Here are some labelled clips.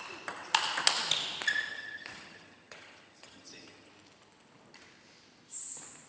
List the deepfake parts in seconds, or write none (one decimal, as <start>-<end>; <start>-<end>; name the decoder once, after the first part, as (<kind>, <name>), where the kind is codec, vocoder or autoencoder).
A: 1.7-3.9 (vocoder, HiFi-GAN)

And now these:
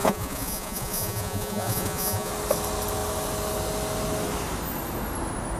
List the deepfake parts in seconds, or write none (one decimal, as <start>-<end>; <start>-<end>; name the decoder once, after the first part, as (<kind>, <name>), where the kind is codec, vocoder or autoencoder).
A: 0.0-2.3 (vocoder, Vocos)

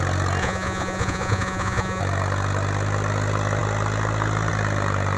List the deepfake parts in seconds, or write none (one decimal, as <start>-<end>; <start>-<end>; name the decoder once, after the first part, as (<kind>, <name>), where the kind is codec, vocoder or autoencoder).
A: 0.4-2.0 (vocoder, Vocos)

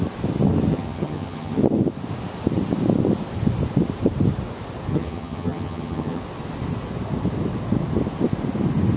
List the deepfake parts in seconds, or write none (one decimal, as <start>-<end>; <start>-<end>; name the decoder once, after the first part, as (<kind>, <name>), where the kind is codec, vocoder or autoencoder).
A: 0.7-1.6 (vocoder, HiFi-GAN); 4.9-6.2